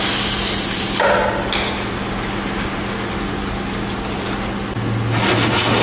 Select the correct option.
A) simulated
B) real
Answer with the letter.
B